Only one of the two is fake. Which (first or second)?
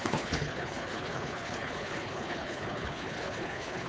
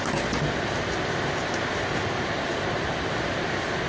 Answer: first